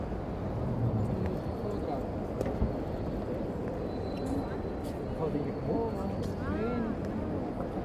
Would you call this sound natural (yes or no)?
yes